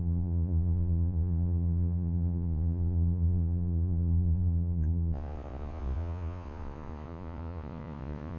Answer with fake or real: fake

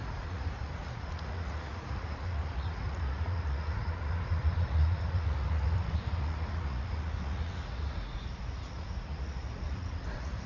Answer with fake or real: fake